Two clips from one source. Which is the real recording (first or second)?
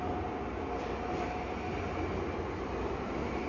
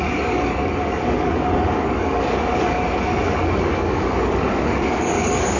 first